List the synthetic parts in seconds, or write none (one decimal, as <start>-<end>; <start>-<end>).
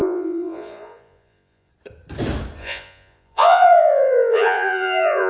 0.0-1.7; 2.6-5.3